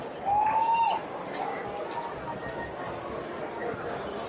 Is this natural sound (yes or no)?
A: yes